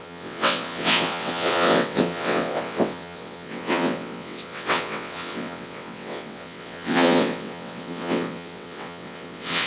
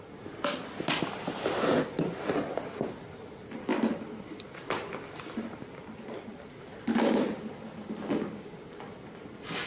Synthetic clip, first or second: first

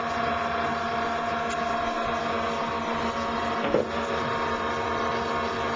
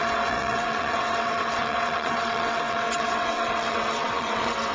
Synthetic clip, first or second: second